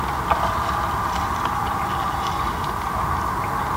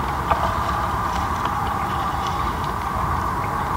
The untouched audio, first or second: first